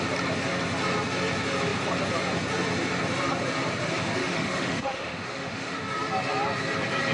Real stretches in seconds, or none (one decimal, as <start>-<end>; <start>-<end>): 0.0-4.2; 5.8-7.1